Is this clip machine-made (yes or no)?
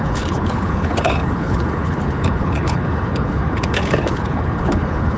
yes